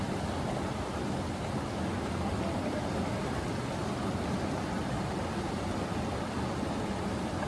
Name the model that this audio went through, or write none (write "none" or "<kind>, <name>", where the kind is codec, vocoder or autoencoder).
none